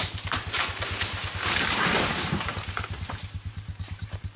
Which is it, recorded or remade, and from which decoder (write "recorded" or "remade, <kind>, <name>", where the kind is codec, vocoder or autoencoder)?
remade, vocoder, BigVGAN v2